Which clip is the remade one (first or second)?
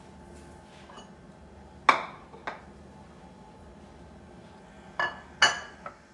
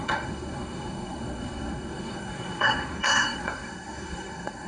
second